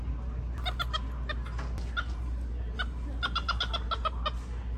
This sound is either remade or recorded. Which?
recorded